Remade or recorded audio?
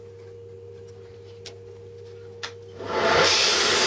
recorded